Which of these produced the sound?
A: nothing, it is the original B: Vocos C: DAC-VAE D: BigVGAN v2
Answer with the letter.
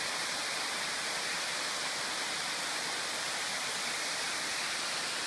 A